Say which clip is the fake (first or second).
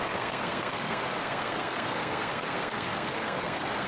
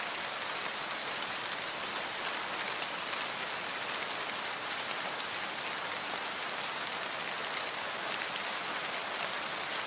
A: first